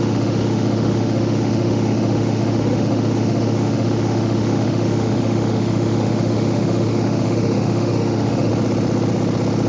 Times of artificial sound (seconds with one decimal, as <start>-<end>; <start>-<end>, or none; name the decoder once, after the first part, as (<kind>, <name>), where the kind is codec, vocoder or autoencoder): 0.0-8.5 (autoencoder, DAC-VAE)